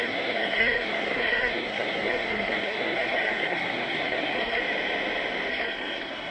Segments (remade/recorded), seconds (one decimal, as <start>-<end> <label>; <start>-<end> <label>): 0.0-4.6 remade; 4.6-5.5 recorded; 5.5-6.3 remade

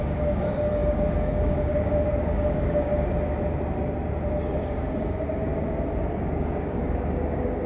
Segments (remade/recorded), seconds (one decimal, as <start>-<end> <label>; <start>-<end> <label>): 0.0-2.9 remade; 2.9-4.4 recorded; 4.4-5.5 remade; 5.5-6.2 recorded; 6.2-7.7 remade